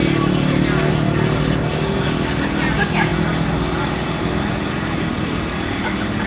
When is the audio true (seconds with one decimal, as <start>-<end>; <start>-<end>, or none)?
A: 0.0-6.3